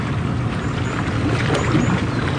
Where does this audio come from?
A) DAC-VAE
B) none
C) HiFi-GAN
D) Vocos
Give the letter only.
B